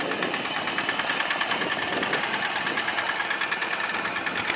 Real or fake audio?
real